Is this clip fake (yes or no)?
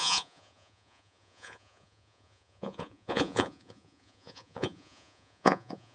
yes